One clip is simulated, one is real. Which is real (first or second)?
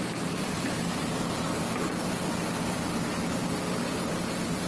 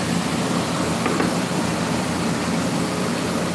first